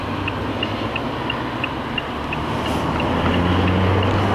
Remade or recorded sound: recorded